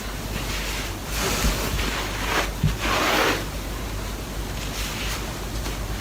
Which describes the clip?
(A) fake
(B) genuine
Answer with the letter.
B